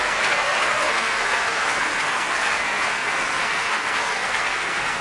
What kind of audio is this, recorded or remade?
remade